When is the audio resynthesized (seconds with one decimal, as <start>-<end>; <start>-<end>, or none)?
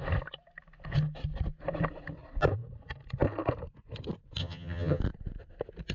4.4-5.0